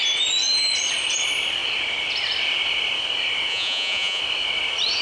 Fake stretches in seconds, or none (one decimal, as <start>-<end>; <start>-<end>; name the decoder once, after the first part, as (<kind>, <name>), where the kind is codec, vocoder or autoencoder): 3.5-4.2 (vocoder, Vocos)